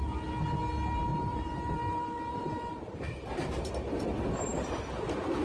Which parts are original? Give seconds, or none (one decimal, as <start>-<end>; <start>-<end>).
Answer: 0.0-1.1; 4.3-5.4